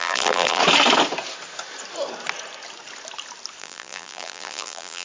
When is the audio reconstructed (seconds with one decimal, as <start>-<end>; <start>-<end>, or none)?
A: 0.0-0.6; 3.6-5.0